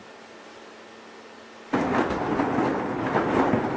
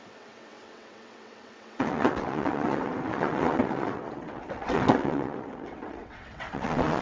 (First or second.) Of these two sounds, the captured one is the first